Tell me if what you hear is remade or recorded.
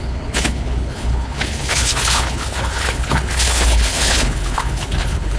remade